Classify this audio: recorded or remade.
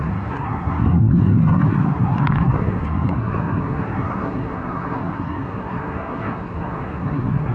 remade